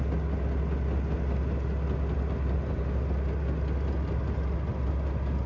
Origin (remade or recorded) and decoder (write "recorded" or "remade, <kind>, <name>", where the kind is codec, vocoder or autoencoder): recorded